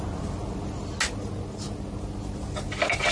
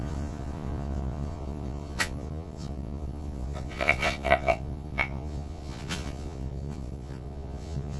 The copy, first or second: second